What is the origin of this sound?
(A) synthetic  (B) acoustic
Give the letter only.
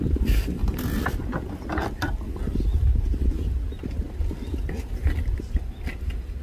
B